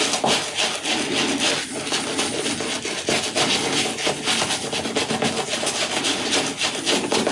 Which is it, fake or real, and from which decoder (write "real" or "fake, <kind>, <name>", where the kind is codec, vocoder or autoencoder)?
real